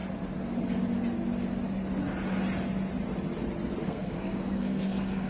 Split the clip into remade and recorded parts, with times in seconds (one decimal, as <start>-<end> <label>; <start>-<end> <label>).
0.0-3.8 recorded; 3.8-5.3 remade

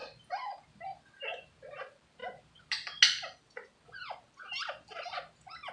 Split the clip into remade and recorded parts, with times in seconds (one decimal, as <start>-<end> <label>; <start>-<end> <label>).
0.0-5.7 recorded

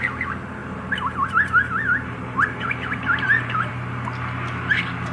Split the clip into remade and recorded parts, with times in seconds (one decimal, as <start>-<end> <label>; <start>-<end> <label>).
0.0-0.6 recorded; 0.6-3.7 remade; 3.7-5.1 recorded